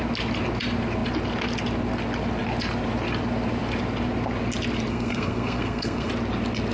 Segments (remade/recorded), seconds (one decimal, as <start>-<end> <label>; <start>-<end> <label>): 0.0-4.9 recorded; 4.9-6.1 remade; 6.1-6.7 recorded